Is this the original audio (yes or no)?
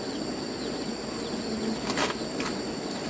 yes